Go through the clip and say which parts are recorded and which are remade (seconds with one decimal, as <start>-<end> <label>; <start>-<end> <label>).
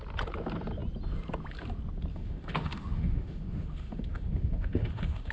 0.0-2.1 recorded; 2.1-5.3 remade